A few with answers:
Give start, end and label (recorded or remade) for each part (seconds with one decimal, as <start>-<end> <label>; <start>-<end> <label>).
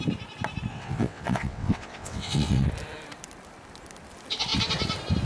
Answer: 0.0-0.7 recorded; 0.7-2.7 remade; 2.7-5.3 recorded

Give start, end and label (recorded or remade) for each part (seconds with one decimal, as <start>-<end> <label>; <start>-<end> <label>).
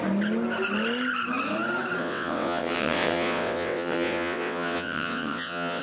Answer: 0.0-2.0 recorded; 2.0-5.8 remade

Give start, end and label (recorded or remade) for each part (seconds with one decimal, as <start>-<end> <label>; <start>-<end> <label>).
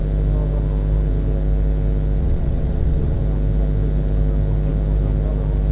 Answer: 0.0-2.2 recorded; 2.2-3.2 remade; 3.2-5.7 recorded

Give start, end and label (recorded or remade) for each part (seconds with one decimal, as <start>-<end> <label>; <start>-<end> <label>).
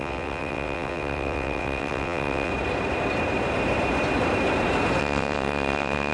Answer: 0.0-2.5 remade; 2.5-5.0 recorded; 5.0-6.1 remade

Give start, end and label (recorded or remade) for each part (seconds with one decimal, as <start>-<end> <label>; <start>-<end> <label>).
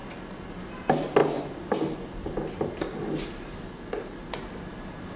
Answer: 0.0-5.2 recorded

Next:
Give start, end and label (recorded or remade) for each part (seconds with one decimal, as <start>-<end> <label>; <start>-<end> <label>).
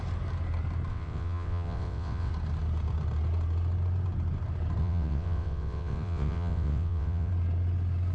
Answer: 0.0-0.9 recorded; 0.9-2.3 remade; 2.3-4.8 recorded; 4.8-7.3 remade; 7.3-8.1 recorded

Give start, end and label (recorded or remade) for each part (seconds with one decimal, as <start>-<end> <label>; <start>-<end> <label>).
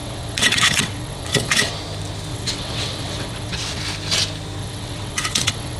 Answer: 0.0-1.7 remade; 1.7-2.3 recorded; 2.3-3.8 remade; 3.8-4.6 recorded; 4.6-5.8 remade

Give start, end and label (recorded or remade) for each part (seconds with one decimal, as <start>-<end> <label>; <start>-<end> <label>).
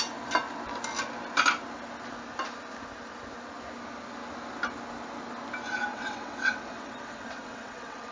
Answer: 0.0-5.9 recorded; 5.9-8.1 remade